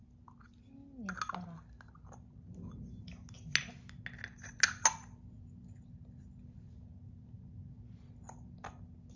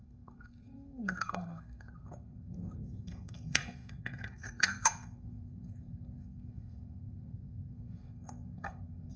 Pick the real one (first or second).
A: first